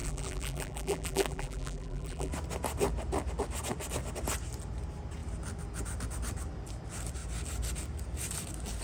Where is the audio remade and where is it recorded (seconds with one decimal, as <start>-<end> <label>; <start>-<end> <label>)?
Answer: 0.0-2.3 remade; 2.3-8.8 recorded